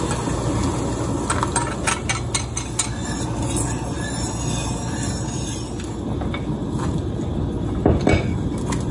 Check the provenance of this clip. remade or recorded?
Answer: recorded